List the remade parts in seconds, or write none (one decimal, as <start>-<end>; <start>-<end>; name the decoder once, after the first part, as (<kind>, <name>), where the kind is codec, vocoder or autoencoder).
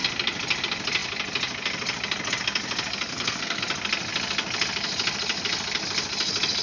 3.1-3.6 (codec, SNAC)